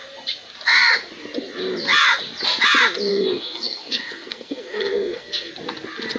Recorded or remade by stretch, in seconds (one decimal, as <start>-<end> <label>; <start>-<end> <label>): 0.0-3.1 recorded; 3.1-5.5 remade; 5.5-6.2 recorded